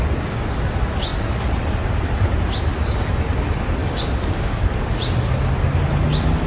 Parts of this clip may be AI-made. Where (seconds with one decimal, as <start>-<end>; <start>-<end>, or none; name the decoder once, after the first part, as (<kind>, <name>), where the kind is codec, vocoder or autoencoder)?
3.8-4.6 (codec, DAC)